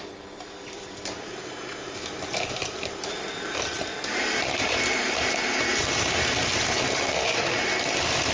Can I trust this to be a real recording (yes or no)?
no